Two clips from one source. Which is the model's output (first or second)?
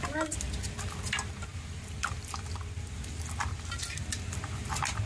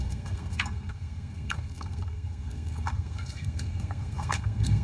second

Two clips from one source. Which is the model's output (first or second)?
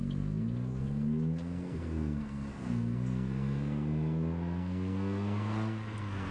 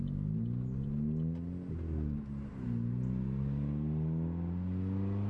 first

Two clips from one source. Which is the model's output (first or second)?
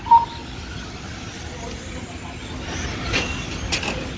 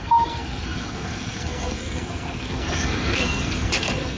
second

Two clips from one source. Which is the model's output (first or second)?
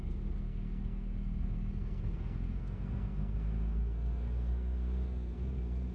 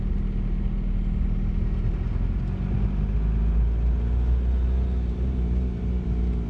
first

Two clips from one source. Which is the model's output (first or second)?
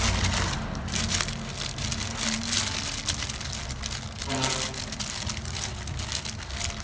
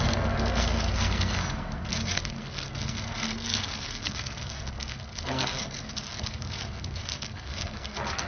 second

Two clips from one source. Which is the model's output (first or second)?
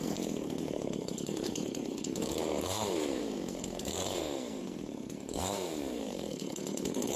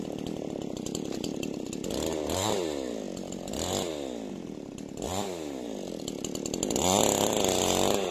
first